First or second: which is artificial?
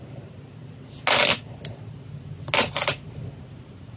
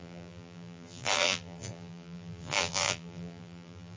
second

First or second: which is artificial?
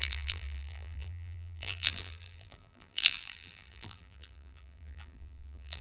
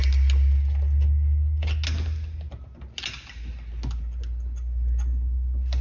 first